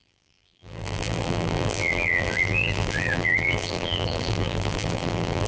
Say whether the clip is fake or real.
fake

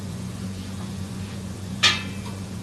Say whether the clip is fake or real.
fake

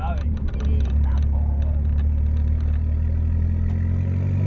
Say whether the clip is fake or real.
real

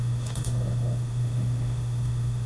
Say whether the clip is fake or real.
fake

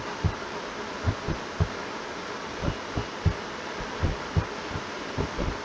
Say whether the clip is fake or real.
real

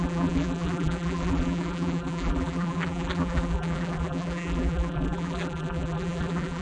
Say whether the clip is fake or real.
fake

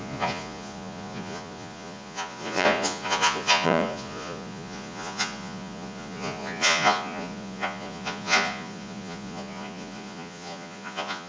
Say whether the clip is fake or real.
fake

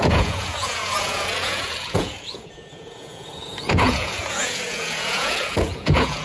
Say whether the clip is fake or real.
fake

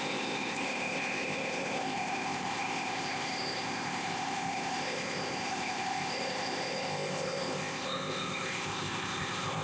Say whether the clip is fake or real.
fake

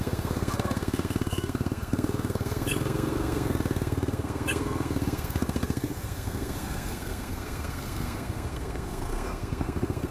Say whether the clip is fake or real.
fake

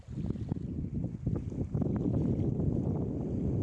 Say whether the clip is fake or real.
real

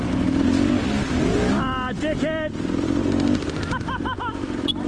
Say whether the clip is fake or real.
real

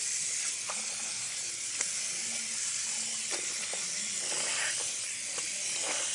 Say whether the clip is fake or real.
real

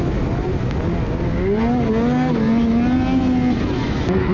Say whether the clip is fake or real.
real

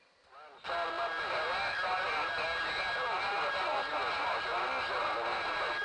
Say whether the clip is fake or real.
real